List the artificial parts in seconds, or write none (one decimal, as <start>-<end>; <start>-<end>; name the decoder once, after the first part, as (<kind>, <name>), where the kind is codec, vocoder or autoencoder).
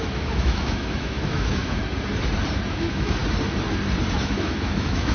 0.0-1.8 (autoencoder, DAC-VAE); 2.7-3.2; 4.1-5.1